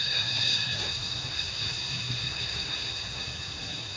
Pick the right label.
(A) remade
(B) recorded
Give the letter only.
A